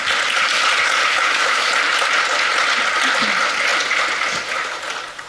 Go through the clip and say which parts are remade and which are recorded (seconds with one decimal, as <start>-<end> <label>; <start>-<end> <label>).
0.0-1.1 recorded; 1.1-1.7 remade; 1.7-5.3 recorded